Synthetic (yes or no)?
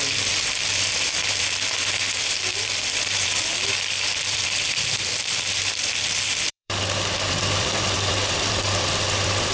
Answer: yes